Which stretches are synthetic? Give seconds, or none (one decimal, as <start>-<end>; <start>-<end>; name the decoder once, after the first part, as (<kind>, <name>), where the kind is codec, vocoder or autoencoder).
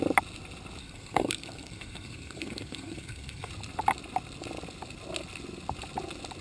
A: 0.8-3.5 (codec, SNAC)